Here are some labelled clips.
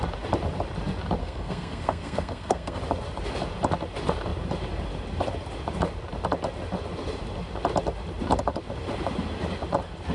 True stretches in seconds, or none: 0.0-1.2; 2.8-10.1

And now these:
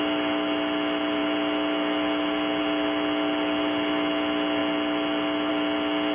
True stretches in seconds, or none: 0.0-6.1

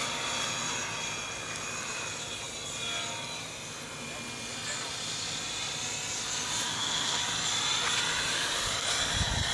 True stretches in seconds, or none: 0.0-6.7; 7.2-9.5

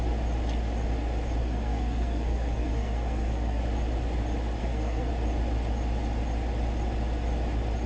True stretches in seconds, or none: 0.0-1.4; 3.6-4.6; 5.1-7.9

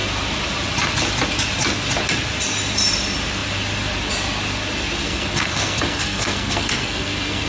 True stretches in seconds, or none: 0.0-5.0